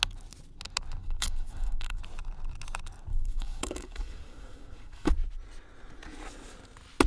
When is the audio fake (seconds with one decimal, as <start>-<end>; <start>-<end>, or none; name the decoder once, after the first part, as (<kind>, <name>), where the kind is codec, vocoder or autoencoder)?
1.0-2.0 (codec, DAC); 3.1-5.1